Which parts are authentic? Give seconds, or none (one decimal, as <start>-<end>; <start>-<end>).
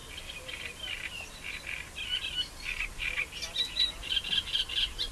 0.0-5.1